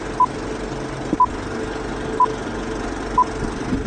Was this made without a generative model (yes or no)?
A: yes